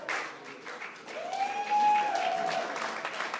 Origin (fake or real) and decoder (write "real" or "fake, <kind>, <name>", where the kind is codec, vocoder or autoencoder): real